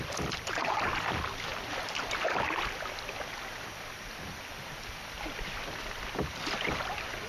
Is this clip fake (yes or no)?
no